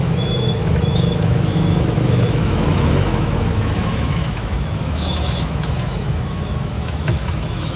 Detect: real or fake fake